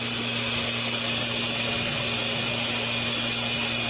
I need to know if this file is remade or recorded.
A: recorded